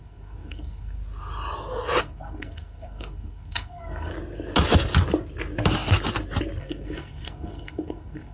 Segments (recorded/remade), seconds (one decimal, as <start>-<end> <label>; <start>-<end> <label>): 0.0-1.0 remade; 1.0-2.0 recorded; 2.0-4.1 remade; 4.1-6.6 recorded; 6.6-8.3 remade